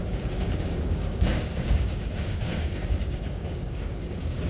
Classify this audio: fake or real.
fake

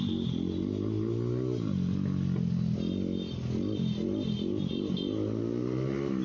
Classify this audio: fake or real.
real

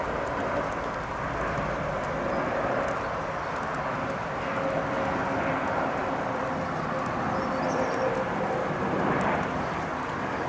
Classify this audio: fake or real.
real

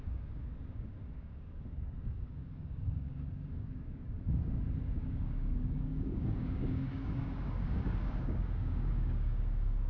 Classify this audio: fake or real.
fake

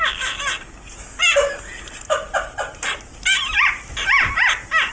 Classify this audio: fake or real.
real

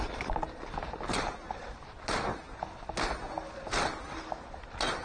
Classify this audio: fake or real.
real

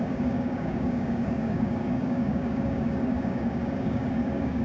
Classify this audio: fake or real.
fake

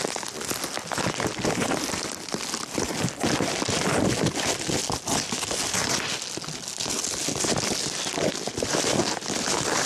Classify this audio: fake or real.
real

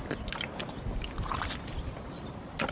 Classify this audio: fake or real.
real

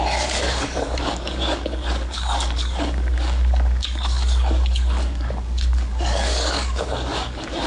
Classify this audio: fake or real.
fake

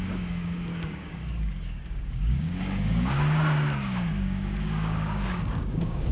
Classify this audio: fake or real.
fake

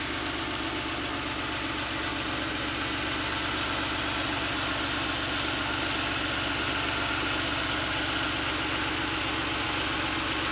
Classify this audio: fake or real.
real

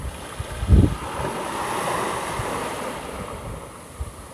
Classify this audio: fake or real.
real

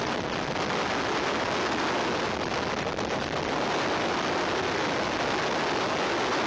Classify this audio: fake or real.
real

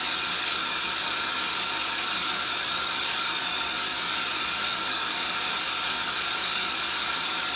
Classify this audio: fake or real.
fake